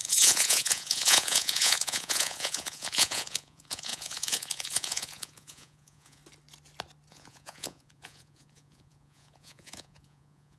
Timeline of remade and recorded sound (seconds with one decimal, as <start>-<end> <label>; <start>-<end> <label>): 0.0-6.2 remade; 6.2-7.1 recorded; 7.1-10.6 remade